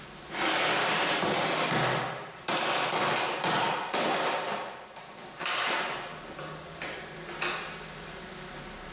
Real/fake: real